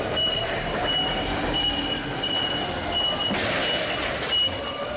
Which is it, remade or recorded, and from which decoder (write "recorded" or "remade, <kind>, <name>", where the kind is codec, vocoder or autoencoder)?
recorded